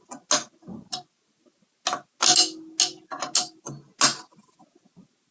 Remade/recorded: recorded